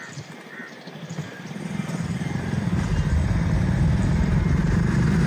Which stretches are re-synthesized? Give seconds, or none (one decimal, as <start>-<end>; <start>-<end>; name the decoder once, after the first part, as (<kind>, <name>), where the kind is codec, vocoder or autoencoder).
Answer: 4.6-5.3 (vocoder, BigVGAN v2)

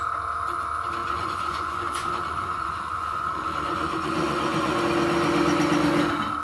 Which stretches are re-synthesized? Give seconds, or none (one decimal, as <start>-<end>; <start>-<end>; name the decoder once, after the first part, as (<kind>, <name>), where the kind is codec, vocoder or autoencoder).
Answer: 1.0-4.8 (vocoder, Vocos)

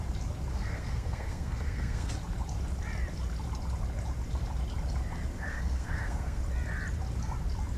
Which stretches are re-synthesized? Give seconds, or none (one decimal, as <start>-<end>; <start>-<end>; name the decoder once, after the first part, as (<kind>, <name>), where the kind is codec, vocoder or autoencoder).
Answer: 0.5-2.1 (codec, SNAC); 5.3-6.4

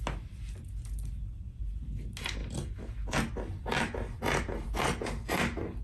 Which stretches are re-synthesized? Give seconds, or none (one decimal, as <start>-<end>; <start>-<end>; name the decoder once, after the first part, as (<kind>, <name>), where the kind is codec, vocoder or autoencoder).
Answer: none

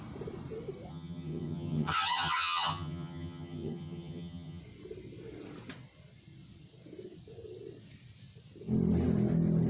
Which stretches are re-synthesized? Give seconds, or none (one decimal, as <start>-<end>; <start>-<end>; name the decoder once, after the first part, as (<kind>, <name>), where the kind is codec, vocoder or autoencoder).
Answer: 0.9-4.6 (vocoder, HiFi-GAN)